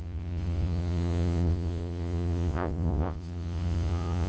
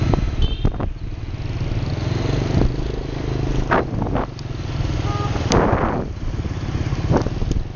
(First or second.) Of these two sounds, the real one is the second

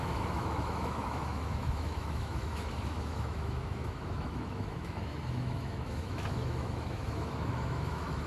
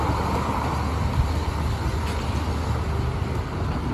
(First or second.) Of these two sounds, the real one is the second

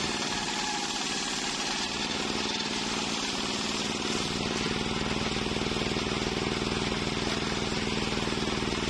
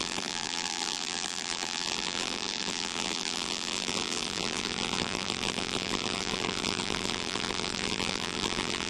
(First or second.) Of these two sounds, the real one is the first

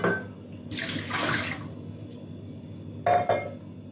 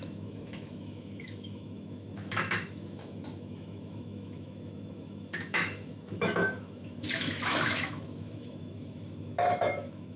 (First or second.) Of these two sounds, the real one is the first